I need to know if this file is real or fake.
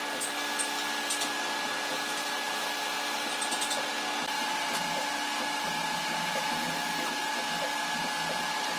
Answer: real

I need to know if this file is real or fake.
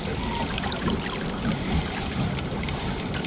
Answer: real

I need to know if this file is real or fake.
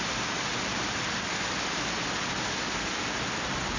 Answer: real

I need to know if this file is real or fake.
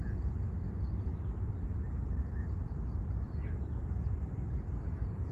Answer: real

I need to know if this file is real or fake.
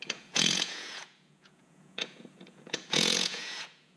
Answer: fake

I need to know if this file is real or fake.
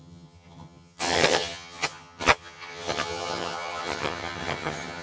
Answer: fake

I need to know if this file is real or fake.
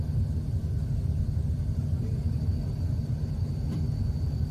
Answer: real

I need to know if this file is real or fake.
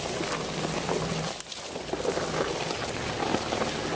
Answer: real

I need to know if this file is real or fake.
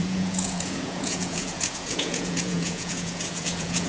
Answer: fake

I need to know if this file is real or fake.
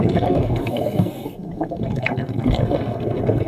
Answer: fake